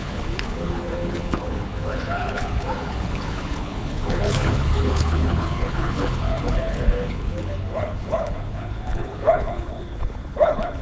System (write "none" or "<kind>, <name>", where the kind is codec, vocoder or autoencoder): codec, HILCodec